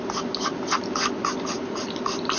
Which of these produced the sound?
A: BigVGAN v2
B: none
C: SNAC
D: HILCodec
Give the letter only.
B